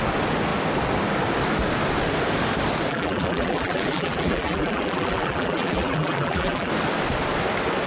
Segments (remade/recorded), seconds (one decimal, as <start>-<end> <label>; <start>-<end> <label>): 0.0-2.9 recorded; 2.9-6.7 remade; 6.7-7.9 recorded